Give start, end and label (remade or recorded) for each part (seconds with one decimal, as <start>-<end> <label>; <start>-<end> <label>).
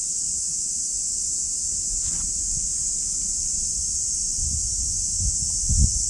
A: 0.0-6.1 recorded